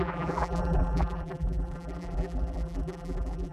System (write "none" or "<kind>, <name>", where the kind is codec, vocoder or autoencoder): vocoder, BigVGAN v2